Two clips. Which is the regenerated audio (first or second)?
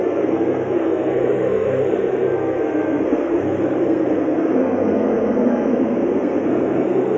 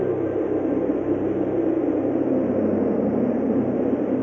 first